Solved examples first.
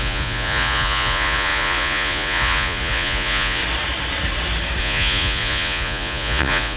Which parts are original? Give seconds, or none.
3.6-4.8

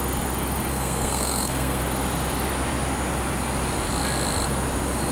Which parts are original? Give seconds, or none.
0.0-0.7; 1.8-5.1

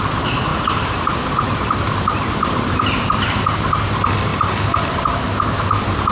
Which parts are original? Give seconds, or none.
0.0-0.5; 3.7-4.3

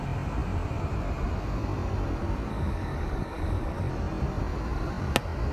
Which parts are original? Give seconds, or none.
0.0-2.5; 3.9-5.5

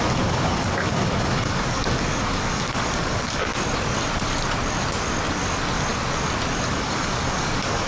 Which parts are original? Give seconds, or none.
3.5-6.7

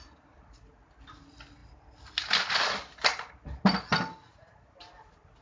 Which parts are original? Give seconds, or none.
0.0-5.4

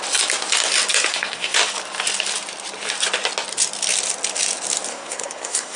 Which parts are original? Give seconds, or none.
0.0-1.1; 1.6-4.9